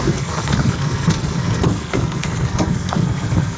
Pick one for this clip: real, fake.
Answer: fake